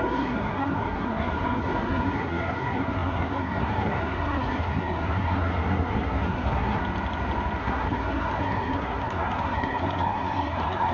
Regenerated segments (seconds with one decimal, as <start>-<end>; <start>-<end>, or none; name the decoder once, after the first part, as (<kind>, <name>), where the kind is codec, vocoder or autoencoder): 0.0-6.8 (codec, SNAC); 7.6-10.9